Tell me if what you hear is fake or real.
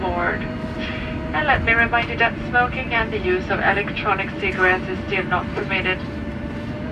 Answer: real